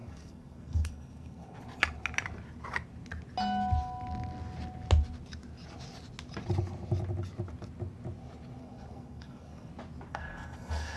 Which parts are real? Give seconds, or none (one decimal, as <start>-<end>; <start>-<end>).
1.6-8.6; 9.7-10.1